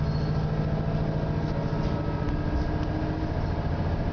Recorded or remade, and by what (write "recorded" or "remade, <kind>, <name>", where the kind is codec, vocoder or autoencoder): recorded